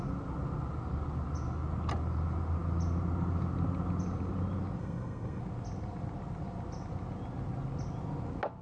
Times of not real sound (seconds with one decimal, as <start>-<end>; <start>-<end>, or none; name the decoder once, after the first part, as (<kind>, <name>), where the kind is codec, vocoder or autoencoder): 4.8-5.4 (codec, SNAC)